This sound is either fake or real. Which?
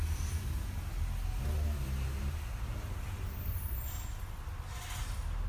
real